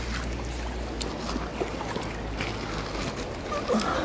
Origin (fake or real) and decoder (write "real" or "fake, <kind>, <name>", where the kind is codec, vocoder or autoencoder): real